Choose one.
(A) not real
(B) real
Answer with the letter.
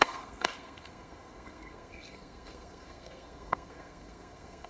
A